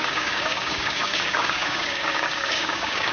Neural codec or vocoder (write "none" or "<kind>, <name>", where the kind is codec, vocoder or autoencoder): codec, DAC